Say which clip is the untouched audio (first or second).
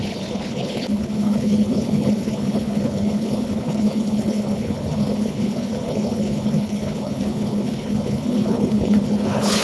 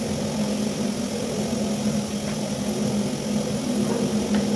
second